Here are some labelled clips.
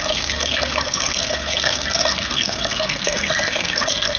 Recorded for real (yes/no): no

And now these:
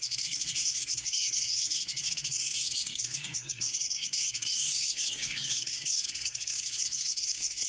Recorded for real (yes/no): no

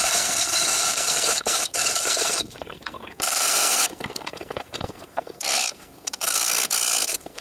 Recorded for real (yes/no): no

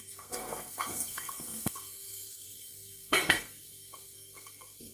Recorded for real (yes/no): no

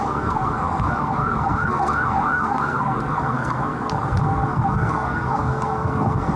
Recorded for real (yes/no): no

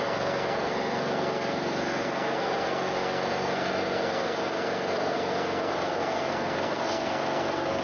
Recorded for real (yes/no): no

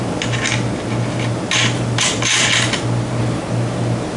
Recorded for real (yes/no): yes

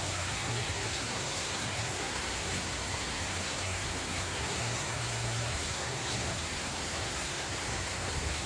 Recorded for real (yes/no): no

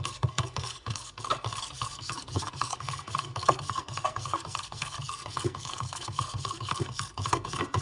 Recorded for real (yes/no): no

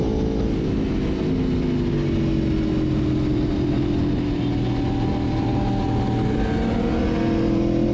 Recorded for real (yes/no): yes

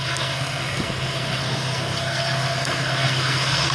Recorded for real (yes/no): no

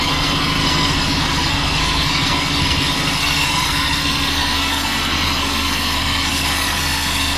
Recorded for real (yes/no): no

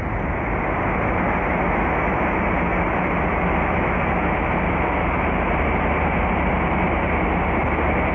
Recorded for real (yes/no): yes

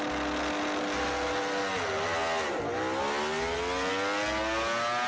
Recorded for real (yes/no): yes